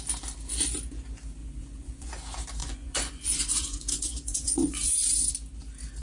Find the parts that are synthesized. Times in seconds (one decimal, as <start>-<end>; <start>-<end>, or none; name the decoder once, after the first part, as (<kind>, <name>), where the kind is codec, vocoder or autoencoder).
1.4-2.1 (vocoder, Vocos); 2.6-5.3